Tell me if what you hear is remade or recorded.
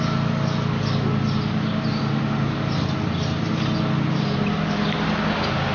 recorded